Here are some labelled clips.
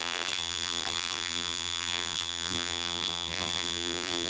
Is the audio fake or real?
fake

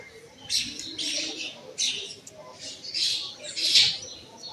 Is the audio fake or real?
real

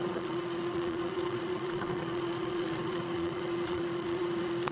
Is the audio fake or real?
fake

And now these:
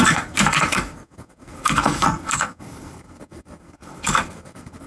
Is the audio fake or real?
fake